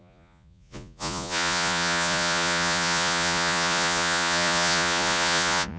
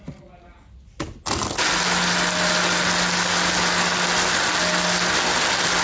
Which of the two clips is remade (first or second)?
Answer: first